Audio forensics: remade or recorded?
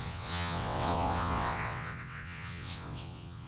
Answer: remade